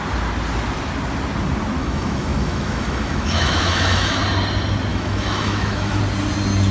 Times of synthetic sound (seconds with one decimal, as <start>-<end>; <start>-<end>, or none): 1.8-4.2; 4.9-6.0

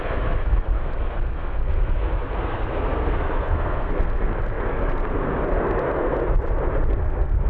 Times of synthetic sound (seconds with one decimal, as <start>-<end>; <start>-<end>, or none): 0.0-5.1; 5.6-6.2; 6.9-7.5